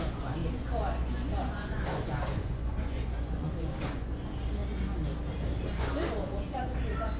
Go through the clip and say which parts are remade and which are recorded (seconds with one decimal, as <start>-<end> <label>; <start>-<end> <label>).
0.0-4.6 remade; 4.6-5.8 recorded; 5.8-7.2 remade